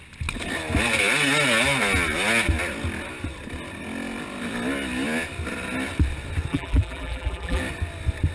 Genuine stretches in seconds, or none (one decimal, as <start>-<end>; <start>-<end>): 0.0-6.5; 7.6-8.3